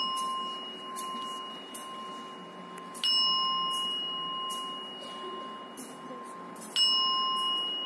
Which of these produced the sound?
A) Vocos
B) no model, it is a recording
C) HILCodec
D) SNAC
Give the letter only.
B